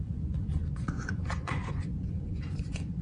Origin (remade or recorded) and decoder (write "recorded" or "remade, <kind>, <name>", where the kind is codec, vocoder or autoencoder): remade, vocoder, Vocos